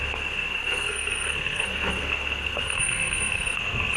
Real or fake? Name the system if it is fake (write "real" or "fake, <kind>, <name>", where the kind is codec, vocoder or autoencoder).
fake, codec, SNAC